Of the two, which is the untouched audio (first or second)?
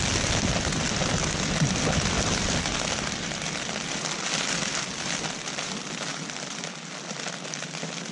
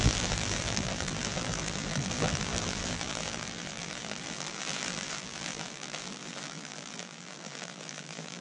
first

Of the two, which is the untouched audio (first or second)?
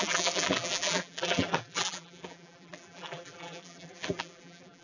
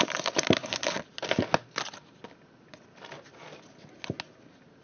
second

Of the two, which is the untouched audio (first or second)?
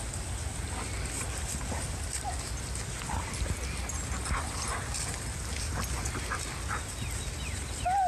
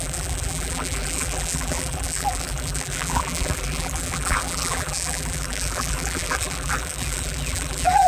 first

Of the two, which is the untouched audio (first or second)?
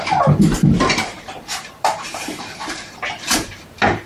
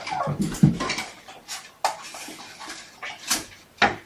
second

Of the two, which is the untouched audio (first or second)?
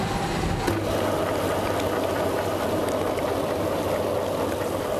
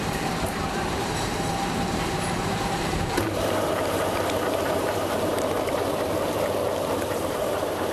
first